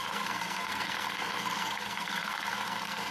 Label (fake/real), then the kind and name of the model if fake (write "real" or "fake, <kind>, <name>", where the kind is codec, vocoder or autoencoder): fake, codec, SNAC